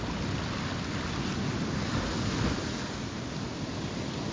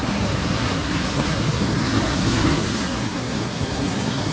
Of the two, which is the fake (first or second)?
second